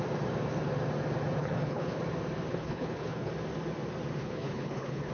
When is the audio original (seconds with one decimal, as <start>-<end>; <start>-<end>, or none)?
0.0-1.4; 2.0-2.5; 3.3-4.2